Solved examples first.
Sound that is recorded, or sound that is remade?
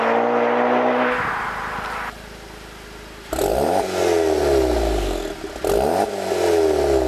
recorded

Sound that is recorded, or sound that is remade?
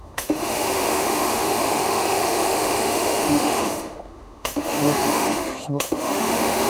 remade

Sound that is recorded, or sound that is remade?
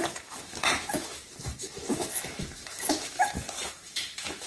remade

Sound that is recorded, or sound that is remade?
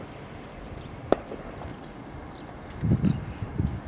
recorded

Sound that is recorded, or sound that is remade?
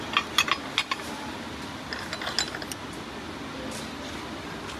recorded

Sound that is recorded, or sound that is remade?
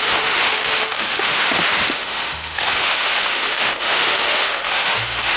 remade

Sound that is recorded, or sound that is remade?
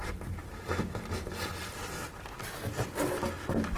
recorded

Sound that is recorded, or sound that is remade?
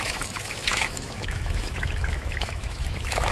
remade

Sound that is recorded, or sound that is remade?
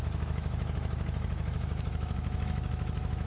remade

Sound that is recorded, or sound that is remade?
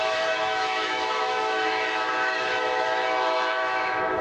remade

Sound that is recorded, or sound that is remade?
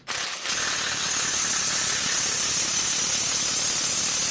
recorded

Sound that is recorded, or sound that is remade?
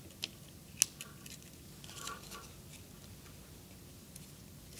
recorded